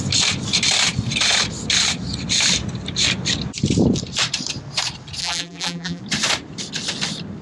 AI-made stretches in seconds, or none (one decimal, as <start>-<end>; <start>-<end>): 5.2-6.0